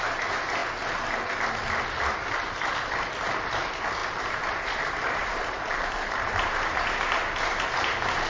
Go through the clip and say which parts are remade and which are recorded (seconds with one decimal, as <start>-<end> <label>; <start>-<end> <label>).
0.0-4.0 recorded; 4.0-8.3 remade